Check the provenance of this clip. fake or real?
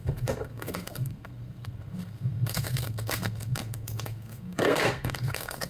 fake